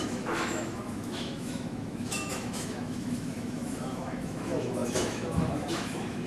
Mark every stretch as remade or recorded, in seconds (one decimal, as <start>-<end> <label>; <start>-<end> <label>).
0.0-6.3 remade